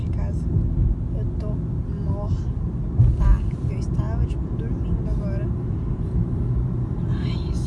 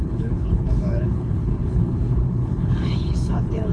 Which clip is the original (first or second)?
first